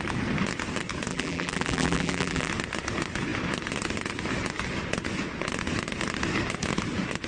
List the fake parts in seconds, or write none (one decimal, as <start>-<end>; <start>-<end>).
1.1-2.5